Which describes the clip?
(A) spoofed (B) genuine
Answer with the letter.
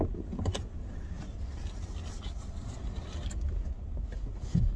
B